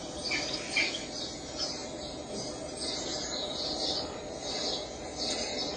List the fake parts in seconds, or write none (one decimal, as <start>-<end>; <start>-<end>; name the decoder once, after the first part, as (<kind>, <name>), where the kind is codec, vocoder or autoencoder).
0.0-0.9 (vocoder, BigVGAN v2)